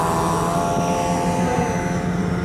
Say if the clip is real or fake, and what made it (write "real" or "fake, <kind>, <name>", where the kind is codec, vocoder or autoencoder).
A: real